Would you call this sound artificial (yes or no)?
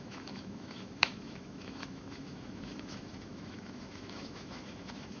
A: yes